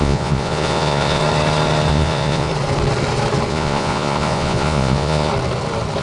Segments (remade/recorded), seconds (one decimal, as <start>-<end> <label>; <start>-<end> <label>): 0.0-1.2 remade; 1.2-1.9 recorded; 1.9-2.5 remade; 2.5-3.5 recorded; 3.5-5.3 remade; 5.3-6.0 recorded